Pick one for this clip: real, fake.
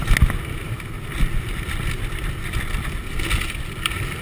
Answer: real